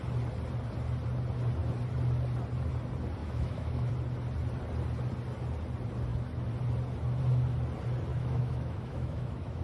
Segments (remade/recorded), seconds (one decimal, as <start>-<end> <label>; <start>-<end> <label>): 0.0-3.2 recorded; 3.2-3.9 remade; 3.9-8.1 recorded; 8.1-9.6 remade